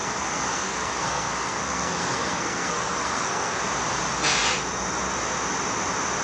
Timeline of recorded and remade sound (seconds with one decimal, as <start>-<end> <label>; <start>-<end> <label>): 0.0-3.6 remade; 3.6-6.2 recorded